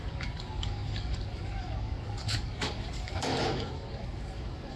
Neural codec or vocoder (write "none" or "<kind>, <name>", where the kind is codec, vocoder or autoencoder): codec, DAC